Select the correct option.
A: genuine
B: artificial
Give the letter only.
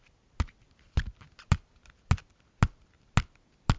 A